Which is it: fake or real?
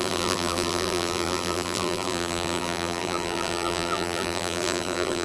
fake